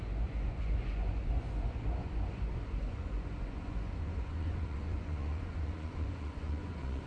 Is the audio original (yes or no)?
no